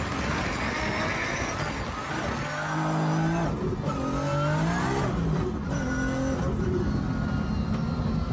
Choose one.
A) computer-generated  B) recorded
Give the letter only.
B